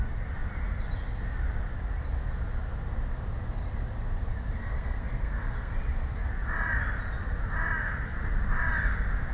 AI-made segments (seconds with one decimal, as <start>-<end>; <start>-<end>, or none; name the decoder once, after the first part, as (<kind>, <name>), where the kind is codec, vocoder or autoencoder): 4.6-5.7 (codec, SNAC)